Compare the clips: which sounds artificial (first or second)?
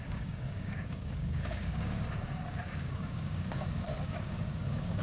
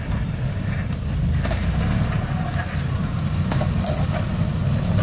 first